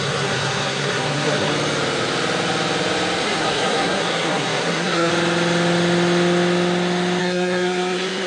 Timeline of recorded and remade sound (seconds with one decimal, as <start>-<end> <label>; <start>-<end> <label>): 0.0-1.5 remade; 1.5-3.2 recorded; 3.2-5.1 remade; 5.1-7.2 recorded; 7.2-8.3 remade